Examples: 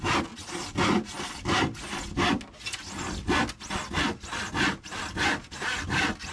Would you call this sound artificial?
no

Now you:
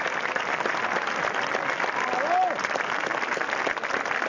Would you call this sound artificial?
no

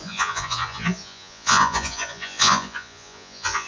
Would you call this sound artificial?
yes